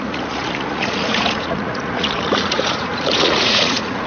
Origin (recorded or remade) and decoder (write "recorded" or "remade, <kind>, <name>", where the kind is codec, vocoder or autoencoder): remade, vocoder, Vocos